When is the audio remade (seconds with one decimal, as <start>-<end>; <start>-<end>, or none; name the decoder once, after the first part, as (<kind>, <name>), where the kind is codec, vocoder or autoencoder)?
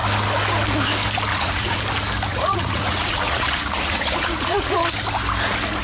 1.3-1.8 (vocoder, Vocos); 2.3-4.8